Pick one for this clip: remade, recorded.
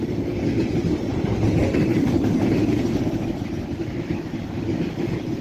recorded